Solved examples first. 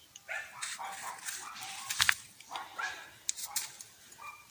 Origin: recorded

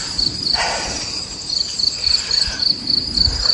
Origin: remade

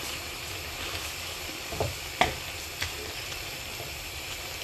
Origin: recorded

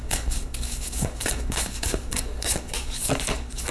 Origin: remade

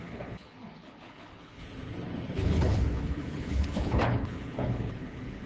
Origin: remade